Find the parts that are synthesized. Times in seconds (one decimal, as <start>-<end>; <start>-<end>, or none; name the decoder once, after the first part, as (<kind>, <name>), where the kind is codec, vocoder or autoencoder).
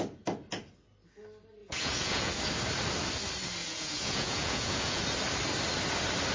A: 1.6-2.3 (vocoder, Vocos); 3.6-5.0